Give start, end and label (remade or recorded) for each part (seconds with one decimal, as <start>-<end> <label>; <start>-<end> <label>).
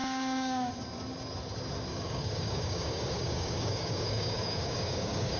0.0-0.7 remade; 0.7-1.9 recorded; 1.9-5.4 remade